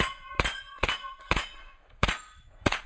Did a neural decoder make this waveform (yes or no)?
yes